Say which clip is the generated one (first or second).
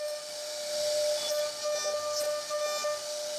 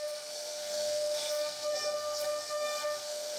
second